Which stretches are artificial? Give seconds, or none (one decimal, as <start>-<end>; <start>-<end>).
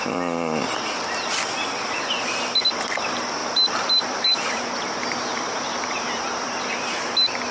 3.4-6.6